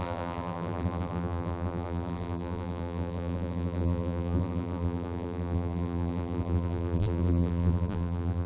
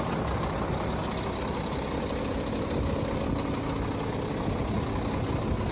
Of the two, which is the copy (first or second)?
first